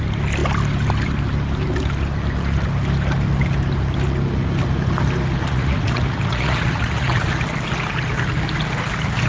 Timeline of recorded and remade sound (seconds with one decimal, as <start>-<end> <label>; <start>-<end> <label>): 0.0-5.4 recorded; 5.4-7.3 remade; 7.3-9.3 recorded